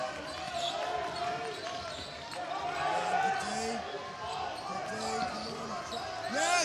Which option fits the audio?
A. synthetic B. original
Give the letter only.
B